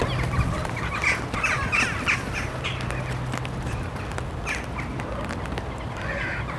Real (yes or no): yes